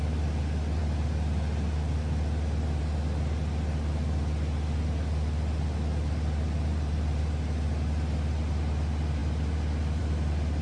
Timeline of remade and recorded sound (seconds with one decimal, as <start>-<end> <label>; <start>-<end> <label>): 0.0-6.7 recorded; 6.7-7.2 remade; 7.2-10.6 recorded